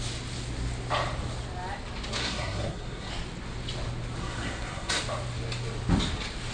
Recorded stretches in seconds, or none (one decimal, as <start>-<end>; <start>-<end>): 0.0-2.2; 3.1-4.2; 5.0-6.5